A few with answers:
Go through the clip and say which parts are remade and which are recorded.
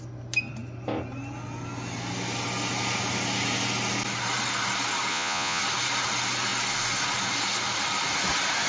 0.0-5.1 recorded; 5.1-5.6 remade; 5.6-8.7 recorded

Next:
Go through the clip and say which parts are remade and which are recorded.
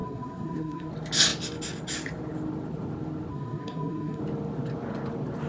0.0-0.9 remade; 0.9-3.3 recorded; 3.3-4.2 remade; 4.2-5.5 recorded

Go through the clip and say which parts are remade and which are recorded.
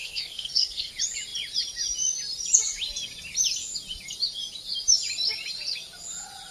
0.0-0.9 remade; 0.9-6.5 recorded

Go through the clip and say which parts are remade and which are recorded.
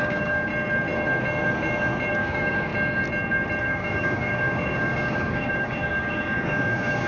0.0-0.5 remade; 0.5-2.1 recorded; 2.1-2.7 remade; 2.7-3.6 recorded; 3.6-7.1 remade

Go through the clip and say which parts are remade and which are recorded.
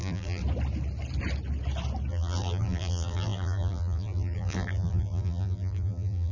0.0-0.4 remade; 0.4-2.1 recorded; 2.1-6.3 remade